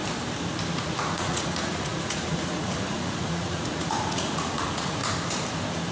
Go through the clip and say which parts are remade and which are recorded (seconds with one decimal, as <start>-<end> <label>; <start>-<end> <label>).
0.0-0.7 recorded; 0.7-5.0 remade; 5.0-5.9 recorded